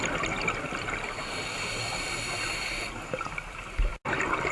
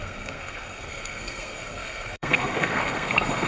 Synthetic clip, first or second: second